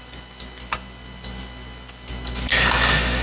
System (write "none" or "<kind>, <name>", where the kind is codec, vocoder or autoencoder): none